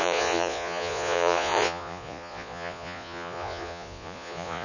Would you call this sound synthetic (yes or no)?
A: yes